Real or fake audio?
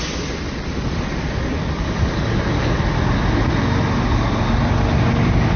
real